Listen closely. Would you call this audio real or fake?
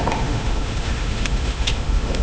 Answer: fake